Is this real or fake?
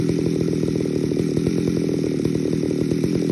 real